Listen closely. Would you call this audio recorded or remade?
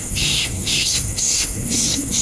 remade